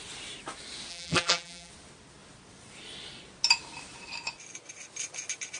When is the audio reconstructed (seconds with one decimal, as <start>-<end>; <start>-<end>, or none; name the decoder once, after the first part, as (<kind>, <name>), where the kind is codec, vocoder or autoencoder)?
0.9-1.7 (vocoder, BigVGAN v2)